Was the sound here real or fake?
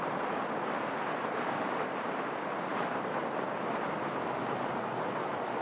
real